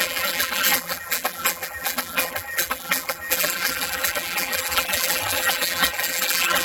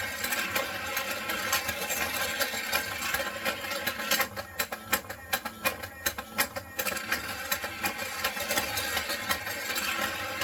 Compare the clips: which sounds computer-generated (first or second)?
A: first